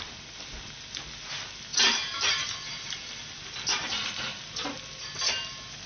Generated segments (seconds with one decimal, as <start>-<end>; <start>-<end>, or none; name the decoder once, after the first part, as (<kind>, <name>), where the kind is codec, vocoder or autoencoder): none